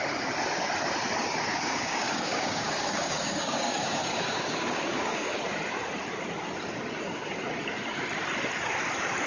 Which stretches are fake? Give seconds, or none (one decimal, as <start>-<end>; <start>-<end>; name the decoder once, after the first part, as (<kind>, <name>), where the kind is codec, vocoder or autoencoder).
1.5-5.4 (codec, DAC)